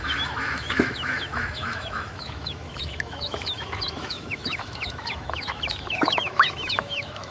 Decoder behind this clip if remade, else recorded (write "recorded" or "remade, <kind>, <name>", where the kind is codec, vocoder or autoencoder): remade, autoencoder, DAC-VAE